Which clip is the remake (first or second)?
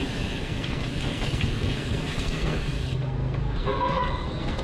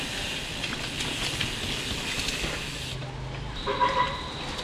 first